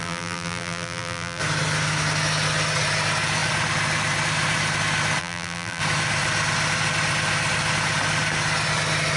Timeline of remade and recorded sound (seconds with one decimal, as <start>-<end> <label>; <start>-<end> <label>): 0.0-1.4 remade; 1.4-5.2 recorded; 5.2-5.8 remade; 5.8-9.2 recorded